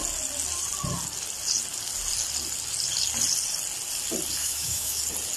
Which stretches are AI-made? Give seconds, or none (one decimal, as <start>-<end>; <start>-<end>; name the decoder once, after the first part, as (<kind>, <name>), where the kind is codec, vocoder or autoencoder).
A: 4.4-5.0 (autoencoder, DAC-VAE)

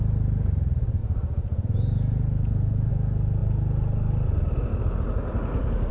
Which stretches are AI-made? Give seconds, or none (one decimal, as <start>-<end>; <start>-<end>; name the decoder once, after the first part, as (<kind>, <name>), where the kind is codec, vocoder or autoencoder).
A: 1.0-2.9 (vocoder, Vocos)

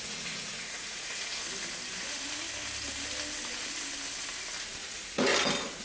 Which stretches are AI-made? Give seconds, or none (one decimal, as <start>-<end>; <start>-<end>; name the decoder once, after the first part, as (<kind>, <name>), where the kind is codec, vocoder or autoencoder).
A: 0.0-1.3 (vocoder, Vocos); 4.8-5.3